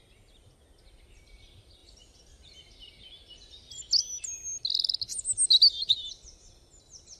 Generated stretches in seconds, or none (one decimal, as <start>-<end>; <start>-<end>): none